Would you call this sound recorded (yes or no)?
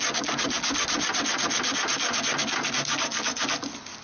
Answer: yes